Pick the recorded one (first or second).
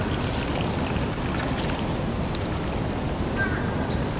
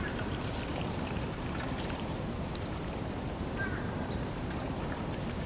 first